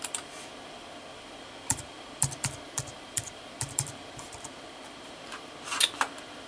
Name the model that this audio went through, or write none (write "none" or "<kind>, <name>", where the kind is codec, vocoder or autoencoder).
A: vocoder, BigVGAN v2